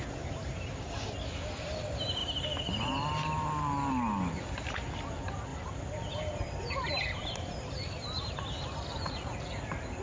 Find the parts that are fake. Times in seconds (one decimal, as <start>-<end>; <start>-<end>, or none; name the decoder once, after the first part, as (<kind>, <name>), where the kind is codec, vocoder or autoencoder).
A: 8.9-9.6 (vocoder, Vocos)